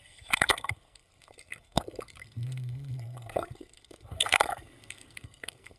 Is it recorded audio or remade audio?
remade